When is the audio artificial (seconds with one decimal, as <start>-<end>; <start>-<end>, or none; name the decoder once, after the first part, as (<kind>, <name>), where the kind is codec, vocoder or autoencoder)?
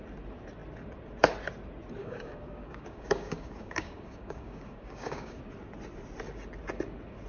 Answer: 2.0-5.4 (codec, DAC)